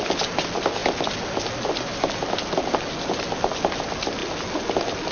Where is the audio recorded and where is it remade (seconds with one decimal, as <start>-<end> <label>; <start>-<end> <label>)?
0.0-5.1 recorded